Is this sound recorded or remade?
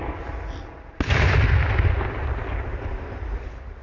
recorded